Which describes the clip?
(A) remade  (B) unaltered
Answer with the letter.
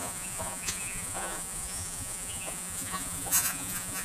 A